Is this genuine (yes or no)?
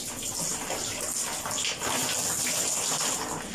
yes